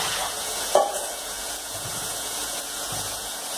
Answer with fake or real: fake